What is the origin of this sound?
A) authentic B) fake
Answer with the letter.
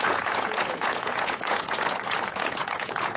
B